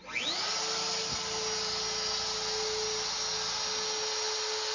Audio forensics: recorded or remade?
recorded